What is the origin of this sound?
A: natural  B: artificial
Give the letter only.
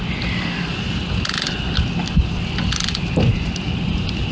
A